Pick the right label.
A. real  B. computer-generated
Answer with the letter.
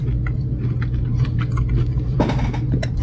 A